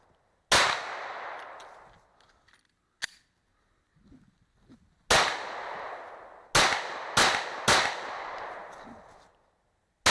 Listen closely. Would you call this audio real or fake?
real